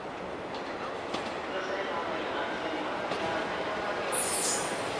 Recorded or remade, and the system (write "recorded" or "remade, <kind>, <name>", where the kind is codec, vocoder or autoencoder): recorded